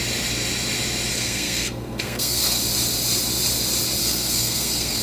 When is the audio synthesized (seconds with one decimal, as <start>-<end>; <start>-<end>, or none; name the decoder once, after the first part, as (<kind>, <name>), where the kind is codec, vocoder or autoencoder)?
1.1-2.6 (codec, SNAC); 4.0-5.0